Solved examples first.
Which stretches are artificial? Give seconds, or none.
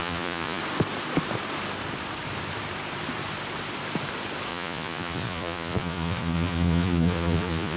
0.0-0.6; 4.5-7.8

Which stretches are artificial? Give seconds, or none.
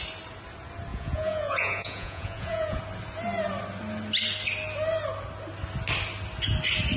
0.9-2.8